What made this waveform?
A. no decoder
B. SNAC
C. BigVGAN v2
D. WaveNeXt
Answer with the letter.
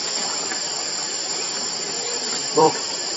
C